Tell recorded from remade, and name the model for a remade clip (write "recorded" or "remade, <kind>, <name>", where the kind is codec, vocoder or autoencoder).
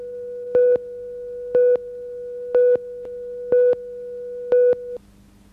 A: recorded